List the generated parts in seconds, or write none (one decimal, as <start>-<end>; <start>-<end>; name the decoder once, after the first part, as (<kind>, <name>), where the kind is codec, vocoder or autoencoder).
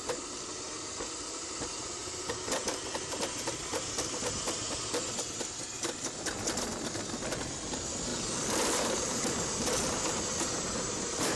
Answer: 8.1-11.4 (vocoder, BigVGAN v2)